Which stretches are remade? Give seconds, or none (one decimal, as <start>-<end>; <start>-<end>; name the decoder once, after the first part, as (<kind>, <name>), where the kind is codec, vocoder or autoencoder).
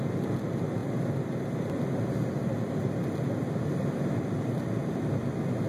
none